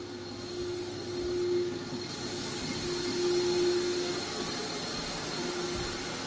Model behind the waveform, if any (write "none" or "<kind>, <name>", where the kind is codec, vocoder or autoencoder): none